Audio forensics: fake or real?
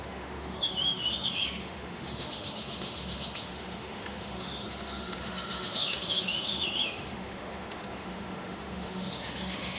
fake